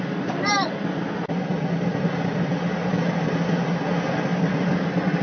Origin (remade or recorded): recorded